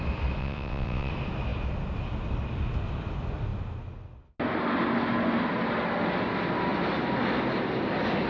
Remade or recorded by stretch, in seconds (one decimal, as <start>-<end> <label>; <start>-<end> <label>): 0.0-0.4 recorded; 0.4-1.1 remade; 1.1-8.3 recorded

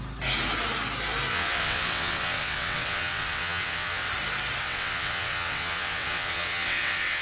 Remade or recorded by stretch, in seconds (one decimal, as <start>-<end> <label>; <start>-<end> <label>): 0.0-1.3 recorded; 1.3-4.1 remade; 4.1-4.6 recorded; 4.6-7.2 remade